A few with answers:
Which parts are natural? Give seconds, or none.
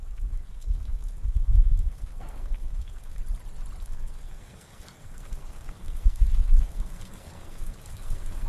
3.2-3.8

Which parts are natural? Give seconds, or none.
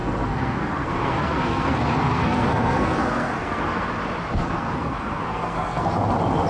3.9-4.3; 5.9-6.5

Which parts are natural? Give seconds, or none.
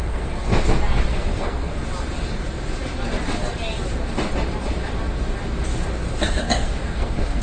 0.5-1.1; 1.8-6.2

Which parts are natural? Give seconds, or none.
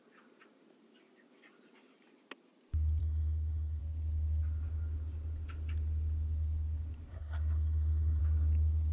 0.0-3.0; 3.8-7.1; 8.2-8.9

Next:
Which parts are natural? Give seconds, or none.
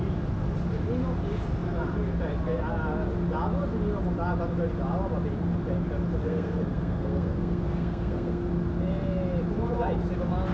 0.0-6.2; 8.5-10.5